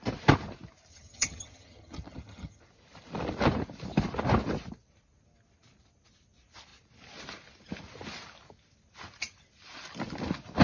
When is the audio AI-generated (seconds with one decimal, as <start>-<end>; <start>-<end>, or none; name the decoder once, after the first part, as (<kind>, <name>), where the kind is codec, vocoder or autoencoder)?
0.9-2.6 (vocoder, HiFi-GAN)